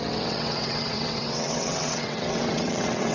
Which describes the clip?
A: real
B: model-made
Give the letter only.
B